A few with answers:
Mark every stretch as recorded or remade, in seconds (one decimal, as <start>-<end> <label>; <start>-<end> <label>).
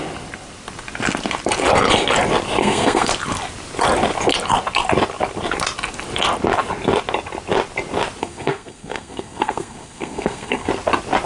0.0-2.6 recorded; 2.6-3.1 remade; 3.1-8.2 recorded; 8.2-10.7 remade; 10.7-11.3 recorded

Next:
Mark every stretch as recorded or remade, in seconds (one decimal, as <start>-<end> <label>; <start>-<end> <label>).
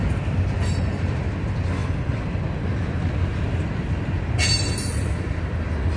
0.0-6.0 recorded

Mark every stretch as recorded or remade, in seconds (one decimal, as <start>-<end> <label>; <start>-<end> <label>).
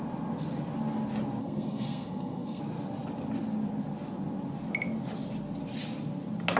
0.0-1.4 recorded; 1.4-2.6 remade; 2.6-6.6 recorded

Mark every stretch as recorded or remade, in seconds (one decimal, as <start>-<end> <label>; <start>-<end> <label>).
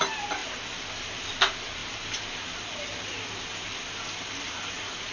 0.0-5.1 recorded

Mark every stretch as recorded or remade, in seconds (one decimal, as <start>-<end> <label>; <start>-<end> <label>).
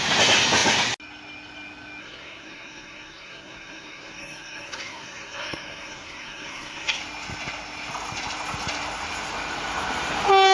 0.0-2.0 recorded; 2.0-7.0 remade; 7.0-10.5 recorded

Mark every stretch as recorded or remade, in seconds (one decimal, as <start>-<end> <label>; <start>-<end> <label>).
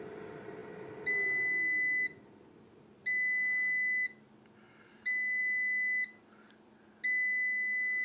0.0-8.0 recorded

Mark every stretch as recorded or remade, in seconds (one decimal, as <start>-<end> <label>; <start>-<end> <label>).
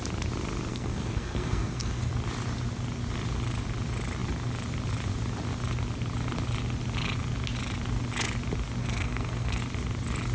0.0-0.7 recorded; 0.7-2.1 remade; 2.1-8.8 recorded; 8.8-9.6 remade; 9.6-10.3 recorded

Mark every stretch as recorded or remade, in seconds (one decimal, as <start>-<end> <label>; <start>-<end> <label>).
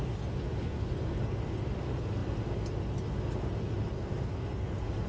0.0-5.1 recorded